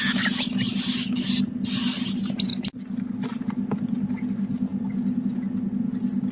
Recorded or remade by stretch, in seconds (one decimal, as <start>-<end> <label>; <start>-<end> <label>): 0.0-6.3 recorded